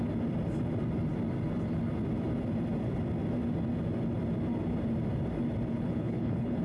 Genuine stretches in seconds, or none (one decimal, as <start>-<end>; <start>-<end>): 0.0-5.7